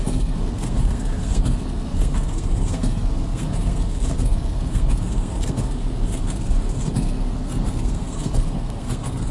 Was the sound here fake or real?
fake